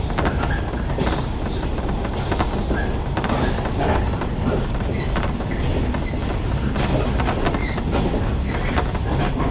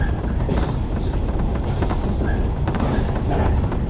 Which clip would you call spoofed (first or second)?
second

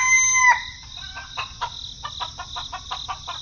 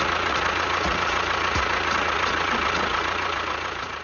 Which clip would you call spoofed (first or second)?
second